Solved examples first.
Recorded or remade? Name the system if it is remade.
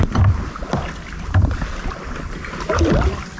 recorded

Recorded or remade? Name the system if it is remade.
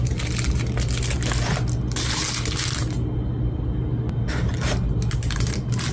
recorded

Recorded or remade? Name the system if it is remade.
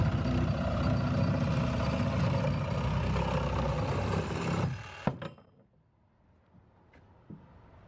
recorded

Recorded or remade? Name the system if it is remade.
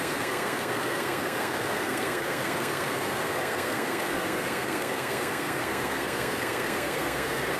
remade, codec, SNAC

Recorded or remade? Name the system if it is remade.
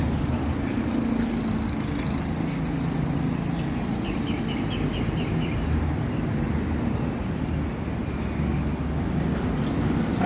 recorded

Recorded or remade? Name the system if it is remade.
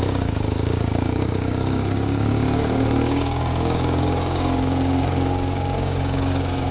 remade, codec, DAC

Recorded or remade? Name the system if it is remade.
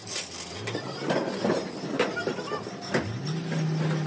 recorded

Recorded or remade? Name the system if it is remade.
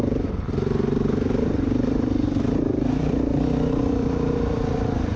remade, vocoder, BigVGAN v2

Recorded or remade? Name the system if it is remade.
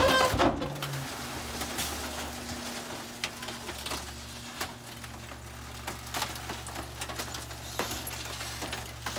recorded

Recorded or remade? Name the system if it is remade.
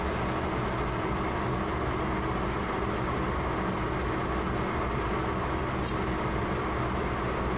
recorded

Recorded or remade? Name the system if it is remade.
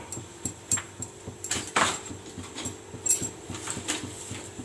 remade, vocoder, BigVGAN v2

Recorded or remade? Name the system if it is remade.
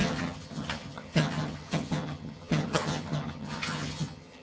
remade, vocoder, HiFi-GAN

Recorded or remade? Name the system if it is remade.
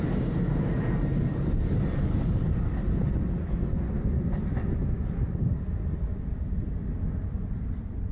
recorded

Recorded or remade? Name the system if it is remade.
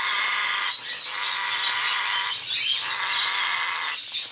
recorded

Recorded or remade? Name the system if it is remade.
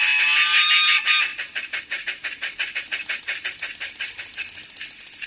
recorded